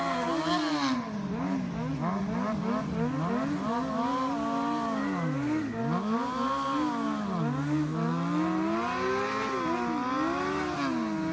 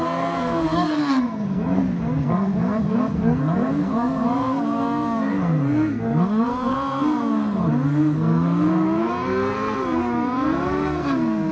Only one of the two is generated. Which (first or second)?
second